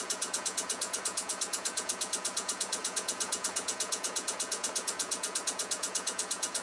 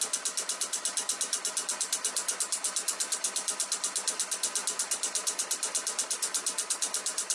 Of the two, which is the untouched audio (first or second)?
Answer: second